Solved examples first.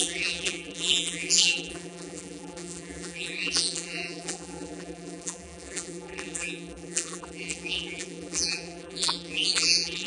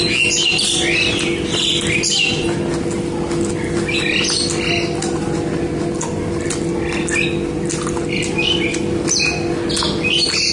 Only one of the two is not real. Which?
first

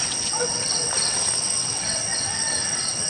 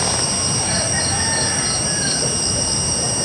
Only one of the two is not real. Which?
first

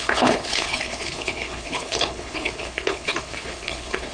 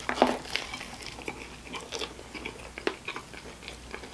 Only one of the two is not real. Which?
first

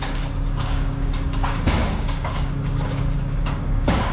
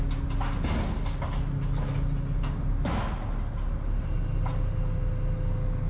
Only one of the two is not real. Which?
first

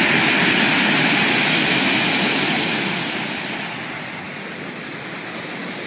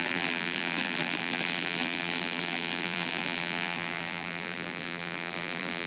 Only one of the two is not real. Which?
second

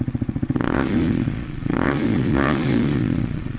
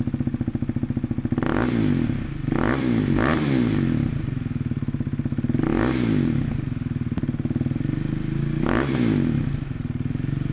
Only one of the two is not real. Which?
first